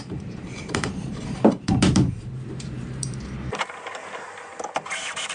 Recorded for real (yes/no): no